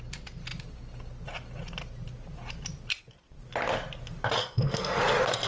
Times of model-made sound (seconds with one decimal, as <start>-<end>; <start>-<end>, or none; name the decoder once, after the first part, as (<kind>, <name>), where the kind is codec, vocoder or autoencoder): 4.4-5.0 (codec, SNAC)